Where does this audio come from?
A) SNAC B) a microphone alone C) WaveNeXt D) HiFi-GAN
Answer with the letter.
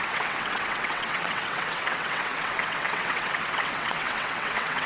C